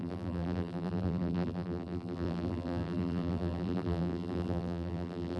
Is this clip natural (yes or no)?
no